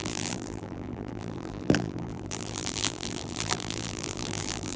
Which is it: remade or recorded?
remade